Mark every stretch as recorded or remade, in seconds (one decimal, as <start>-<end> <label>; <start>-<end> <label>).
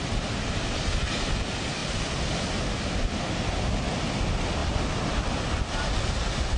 0.0-6.6 recorded